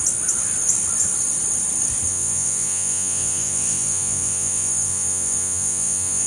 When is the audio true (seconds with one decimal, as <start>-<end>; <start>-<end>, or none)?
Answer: 0.0-2.1